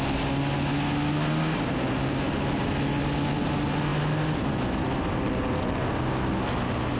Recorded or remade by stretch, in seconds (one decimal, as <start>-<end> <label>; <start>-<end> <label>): 0.0-7.0 recorded